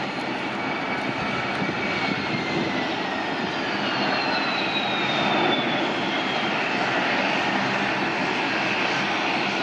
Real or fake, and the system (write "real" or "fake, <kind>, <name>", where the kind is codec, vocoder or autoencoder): real